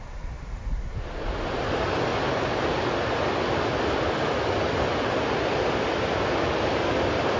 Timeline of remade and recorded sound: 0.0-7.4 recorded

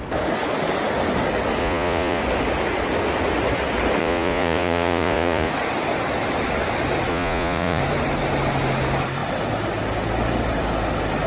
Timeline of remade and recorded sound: 0.0-1.6 recorded; 1.6-2.2 remade; 2.2-4.0 recorded; 4.0-5.5 remade; 5.5-7.1 recorded; 7.1-7.8 remade; 7.8-11.3 recorded

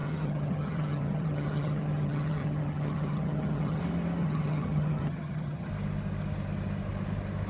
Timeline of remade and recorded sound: 0.0-3.8 remade; 3.8-4.2 recorded; 4.2-5.7 remade; 5.7-7.5 recorded